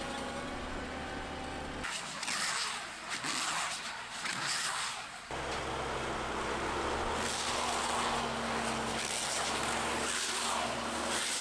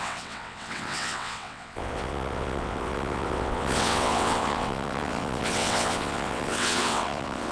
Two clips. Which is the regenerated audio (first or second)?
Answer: second